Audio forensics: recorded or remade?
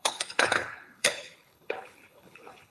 remade